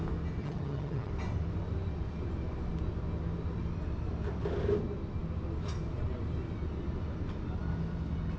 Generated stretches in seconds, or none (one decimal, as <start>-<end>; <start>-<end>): 0.4-1.1